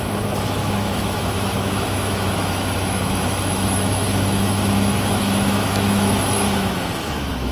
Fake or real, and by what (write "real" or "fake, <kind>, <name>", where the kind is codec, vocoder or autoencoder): fake, autoencoder, DAC-VAE